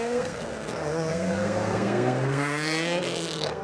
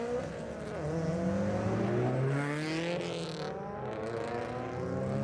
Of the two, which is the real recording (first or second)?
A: second